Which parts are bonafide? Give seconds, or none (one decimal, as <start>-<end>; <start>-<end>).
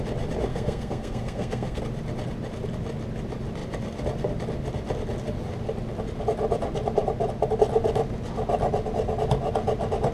0.0-0.5; 1.8-10.1